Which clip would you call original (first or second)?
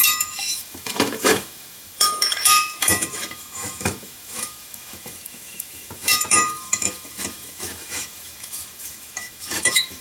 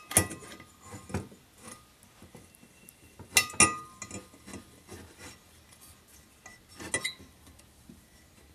second